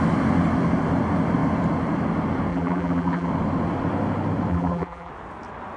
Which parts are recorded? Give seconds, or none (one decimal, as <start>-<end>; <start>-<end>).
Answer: 0.0-2.5; 3.3-4.5; 5.1-5.8